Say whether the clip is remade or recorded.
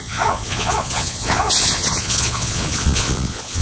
remade